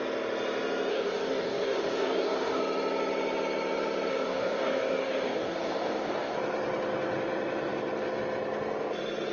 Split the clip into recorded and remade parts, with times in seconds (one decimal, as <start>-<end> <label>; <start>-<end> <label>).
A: 0.0-0.9 recorded; 0.9-2.6 remade; 2.6-4.1 recorded; 4.1-6.4 remade; 6.4-9.3 recorded